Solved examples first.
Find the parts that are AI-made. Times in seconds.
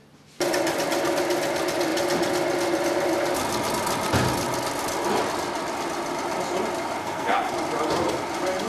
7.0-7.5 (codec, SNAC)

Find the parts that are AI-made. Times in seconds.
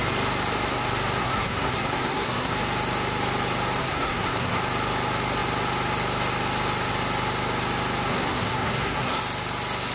1.2-2.5 (codec, SNAC); 3.8-4.6; 8.1-9.2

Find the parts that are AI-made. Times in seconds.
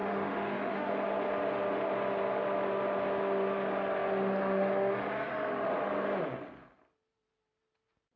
0.0-0.9 (autoencoder, DAC-VAE)